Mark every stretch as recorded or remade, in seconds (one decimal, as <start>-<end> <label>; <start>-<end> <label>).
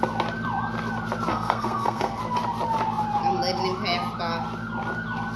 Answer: 0.0-1.3 recorded; 1.3-2.2 remade; 2.2-5.4 recorded